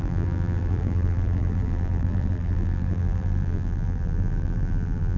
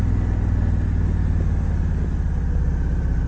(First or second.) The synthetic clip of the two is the first